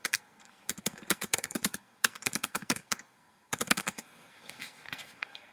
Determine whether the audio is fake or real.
fake